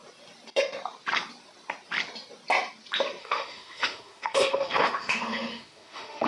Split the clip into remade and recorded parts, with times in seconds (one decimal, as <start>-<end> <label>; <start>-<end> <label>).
0.0-3.2 recorded; 3.2-6.3 remade